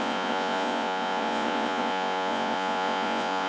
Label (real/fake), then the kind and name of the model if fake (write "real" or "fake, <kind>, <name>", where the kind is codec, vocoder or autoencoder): fake, vocoder, Vocos